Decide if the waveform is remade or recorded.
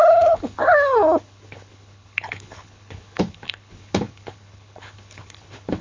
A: remade